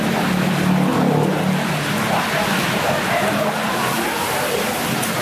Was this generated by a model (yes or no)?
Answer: no